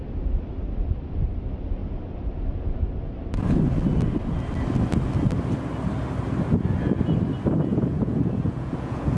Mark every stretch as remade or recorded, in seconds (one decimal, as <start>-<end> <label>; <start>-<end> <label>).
0.0-7.7 recorded; 7.7-9.2 remade